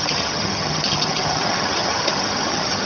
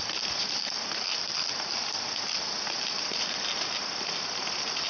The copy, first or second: first